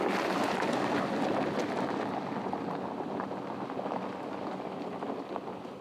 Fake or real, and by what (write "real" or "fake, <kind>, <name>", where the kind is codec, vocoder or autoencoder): real